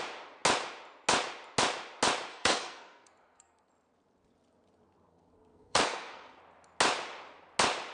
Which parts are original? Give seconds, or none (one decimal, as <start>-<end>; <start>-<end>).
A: 0.0-2.3; 3.7-5.1; 6.4-7.9